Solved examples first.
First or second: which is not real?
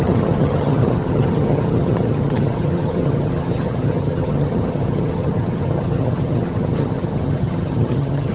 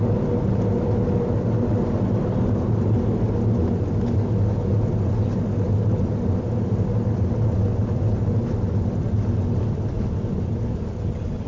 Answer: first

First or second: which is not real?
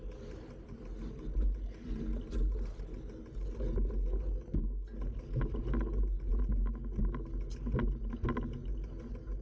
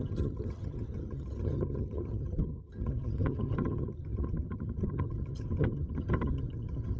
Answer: second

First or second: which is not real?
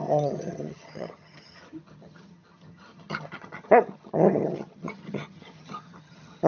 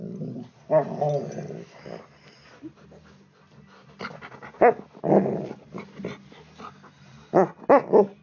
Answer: first